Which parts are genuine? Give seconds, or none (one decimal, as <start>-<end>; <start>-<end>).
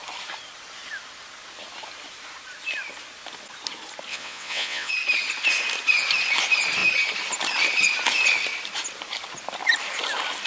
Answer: 0.0-4.1; 4.9-10.5